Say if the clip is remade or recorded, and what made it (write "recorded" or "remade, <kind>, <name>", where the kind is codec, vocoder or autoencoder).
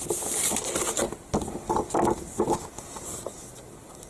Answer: recorded